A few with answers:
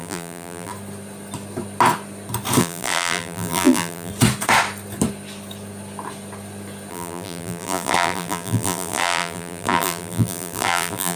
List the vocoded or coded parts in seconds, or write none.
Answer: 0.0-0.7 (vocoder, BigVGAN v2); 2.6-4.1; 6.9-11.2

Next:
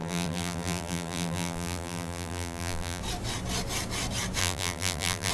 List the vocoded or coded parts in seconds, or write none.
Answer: 0.0-3.0 (vocoder, BigVGAN v2); 4.4-5.3